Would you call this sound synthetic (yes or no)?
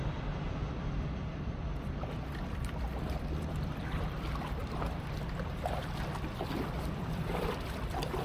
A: yes